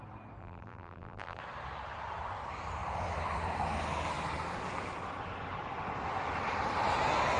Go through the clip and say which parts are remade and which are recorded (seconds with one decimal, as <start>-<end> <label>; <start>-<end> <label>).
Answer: 0.0-0.4 recorded; 0.4-1.4 remade; 1.4-7.4 recorded